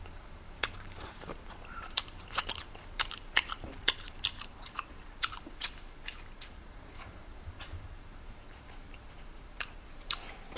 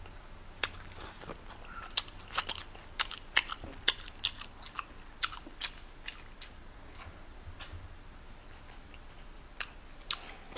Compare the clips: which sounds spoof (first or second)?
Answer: first